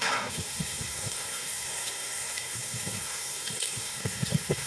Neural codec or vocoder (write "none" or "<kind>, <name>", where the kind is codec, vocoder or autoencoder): codec, SNAC